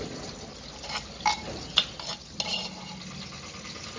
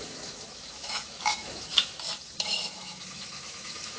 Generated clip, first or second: second